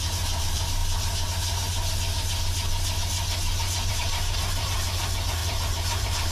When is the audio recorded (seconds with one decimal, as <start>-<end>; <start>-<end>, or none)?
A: 0.8-3.9